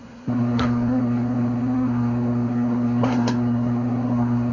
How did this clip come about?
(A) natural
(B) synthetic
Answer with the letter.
B